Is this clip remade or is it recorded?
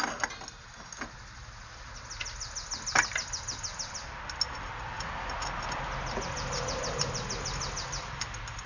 recorded